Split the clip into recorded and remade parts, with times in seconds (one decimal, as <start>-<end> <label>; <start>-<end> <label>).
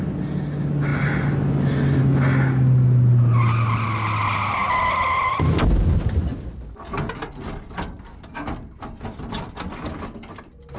0.0-10.8 recorded